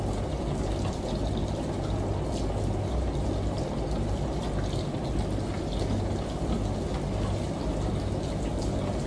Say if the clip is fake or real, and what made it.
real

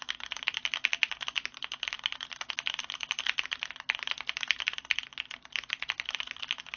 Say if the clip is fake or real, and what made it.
real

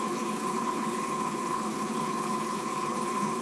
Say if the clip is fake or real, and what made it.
fake, codec, HILCodec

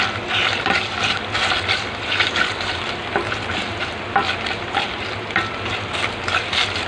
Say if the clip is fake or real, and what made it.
real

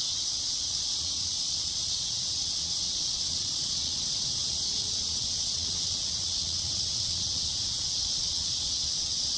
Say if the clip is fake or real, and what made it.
fake, vocoder, Vocos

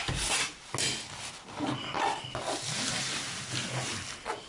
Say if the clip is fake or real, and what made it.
real